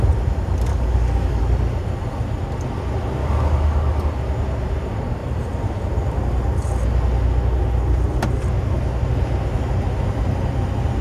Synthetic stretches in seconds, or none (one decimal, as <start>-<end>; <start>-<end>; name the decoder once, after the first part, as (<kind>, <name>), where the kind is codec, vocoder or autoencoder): 0.7-1.4 (codec, DAC); 3.2-4.0